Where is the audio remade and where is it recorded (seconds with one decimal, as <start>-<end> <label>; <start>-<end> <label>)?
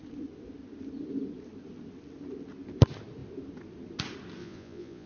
0.0-4.4 recorded; 4.4-5.1 remade